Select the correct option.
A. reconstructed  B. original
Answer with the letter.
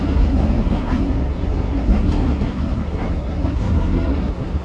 A